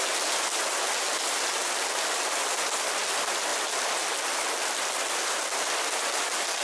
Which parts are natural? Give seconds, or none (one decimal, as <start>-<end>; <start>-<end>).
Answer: 0.0-6.6